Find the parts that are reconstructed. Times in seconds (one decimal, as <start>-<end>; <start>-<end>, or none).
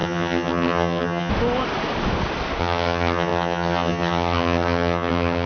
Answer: 0.0-1.3; 2.6-5.5